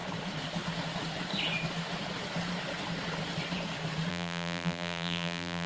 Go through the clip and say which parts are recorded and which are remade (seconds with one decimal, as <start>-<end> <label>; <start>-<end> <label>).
0.0-4.1 recorded; 4.1-5.7 remade